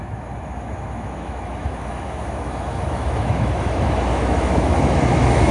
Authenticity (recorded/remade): remade